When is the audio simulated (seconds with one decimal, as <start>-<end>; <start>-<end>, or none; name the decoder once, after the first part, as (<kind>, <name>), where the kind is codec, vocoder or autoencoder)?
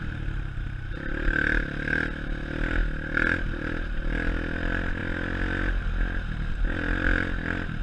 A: none